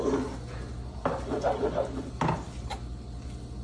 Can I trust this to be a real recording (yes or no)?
yes